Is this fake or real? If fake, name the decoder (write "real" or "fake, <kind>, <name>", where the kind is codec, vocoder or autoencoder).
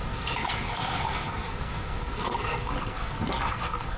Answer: fake, codec, SNAC